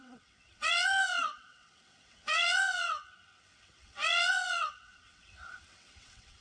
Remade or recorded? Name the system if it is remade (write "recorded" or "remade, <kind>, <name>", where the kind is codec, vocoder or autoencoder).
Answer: remade, vocoder, WaveNeXt